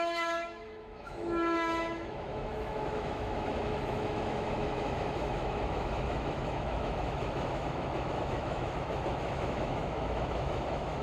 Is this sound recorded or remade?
remade